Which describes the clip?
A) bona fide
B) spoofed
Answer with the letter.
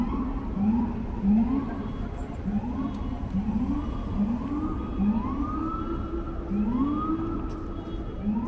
A